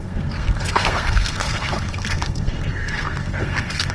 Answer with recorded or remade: remade